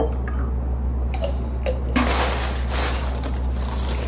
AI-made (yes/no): no